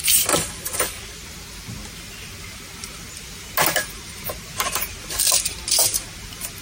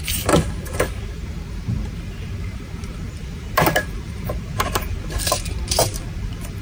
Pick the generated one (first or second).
second